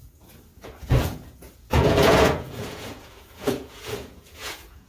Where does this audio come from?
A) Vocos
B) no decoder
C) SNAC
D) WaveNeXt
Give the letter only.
A